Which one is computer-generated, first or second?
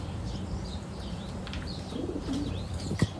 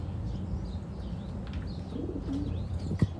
first